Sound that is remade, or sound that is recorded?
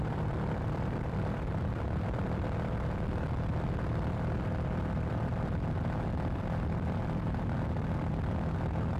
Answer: remade